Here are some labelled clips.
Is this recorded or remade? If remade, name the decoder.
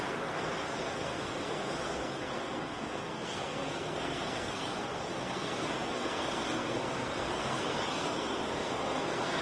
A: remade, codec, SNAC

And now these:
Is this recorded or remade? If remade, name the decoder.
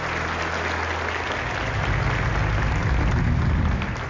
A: recorded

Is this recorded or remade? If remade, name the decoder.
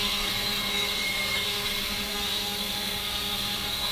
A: remade, codec, SNAC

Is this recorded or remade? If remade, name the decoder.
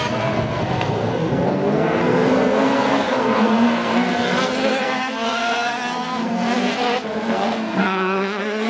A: remade, codec, SNAC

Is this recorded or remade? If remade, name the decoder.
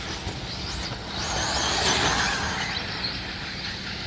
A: recorded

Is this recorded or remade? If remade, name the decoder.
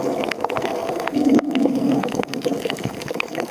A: remade, codec, SNAC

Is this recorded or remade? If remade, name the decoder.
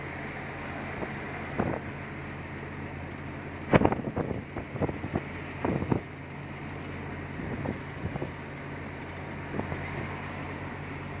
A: recorded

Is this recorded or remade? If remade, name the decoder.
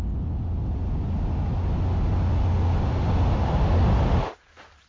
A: recorded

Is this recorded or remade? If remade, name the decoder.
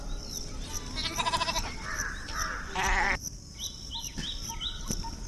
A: recorded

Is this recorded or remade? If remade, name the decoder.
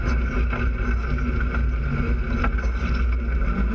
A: recorded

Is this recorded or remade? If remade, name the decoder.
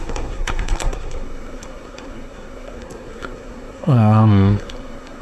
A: remade, codec, SNAC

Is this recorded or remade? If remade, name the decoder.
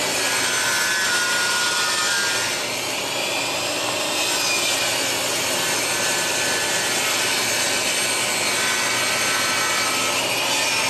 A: recorded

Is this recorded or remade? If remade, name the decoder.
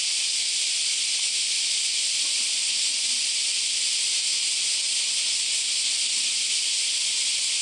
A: recorded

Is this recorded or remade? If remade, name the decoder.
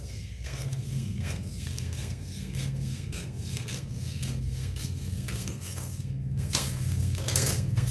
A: remade, codec, SNAC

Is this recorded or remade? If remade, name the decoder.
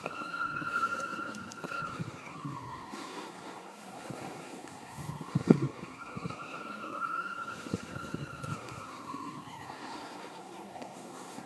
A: remade, codec, SNAC